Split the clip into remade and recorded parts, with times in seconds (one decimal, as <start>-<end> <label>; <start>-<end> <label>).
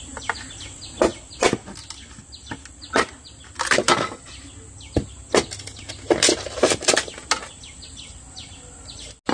0.0-9.3 recorded